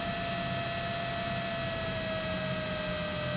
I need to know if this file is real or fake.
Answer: real